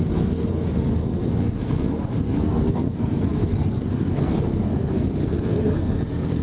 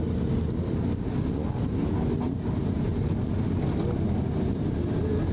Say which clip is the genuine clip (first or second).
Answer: second